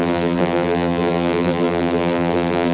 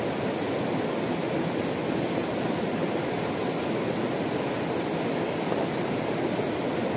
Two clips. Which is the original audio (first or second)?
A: second